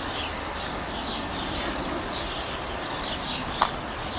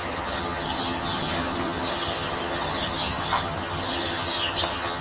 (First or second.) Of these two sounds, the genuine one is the first